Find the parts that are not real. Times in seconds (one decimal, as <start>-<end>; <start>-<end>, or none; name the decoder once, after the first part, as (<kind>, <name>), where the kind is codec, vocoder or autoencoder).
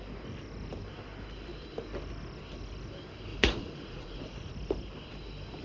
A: 3.3-4.5 (vocoder, Vocos)